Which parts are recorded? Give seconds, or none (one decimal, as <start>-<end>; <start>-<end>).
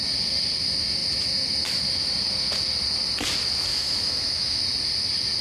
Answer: 0.0-3.7; 4.6-5.4